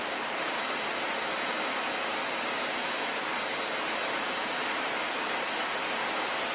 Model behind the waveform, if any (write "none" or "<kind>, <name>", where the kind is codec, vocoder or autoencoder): none